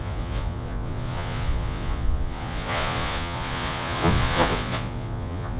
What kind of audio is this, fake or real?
fake